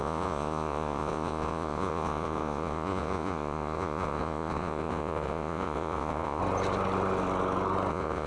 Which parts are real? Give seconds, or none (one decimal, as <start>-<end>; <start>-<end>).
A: 6.4-7.9